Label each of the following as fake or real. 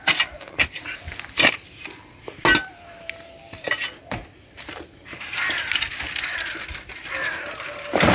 real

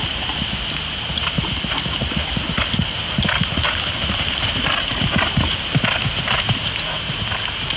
real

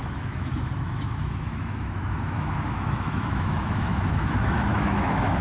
fake